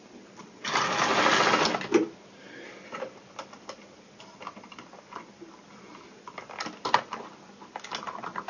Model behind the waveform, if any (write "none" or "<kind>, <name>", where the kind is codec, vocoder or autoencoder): none